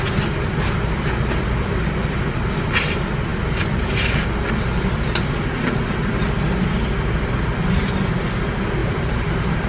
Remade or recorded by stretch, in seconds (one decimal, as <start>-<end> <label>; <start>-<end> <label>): 0.0-8.8 recorded; 8.8-9.7 remade